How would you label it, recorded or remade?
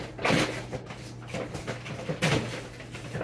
recorded